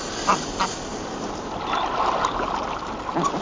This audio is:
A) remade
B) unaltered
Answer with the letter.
B